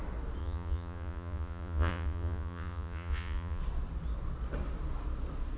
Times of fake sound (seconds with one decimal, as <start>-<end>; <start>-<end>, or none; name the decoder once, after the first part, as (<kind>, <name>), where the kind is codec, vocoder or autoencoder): 0.4-3.6 (vocoder, Vocos)